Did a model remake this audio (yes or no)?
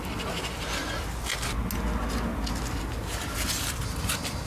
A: no